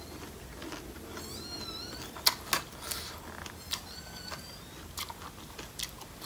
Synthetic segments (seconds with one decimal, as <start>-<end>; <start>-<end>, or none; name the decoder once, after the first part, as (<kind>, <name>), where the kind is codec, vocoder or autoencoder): none